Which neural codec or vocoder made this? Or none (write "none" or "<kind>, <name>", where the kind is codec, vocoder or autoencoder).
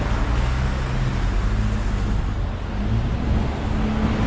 none